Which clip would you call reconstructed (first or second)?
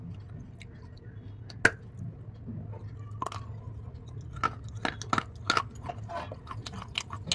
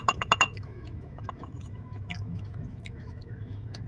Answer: second